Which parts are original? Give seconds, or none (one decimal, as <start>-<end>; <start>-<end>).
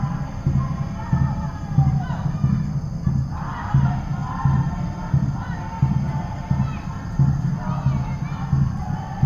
0.0-9.3